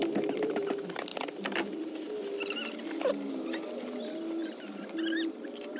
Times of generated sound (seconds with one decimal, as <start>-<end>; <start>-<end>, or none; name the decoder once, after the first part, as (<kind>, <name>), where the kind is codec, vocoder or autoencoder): none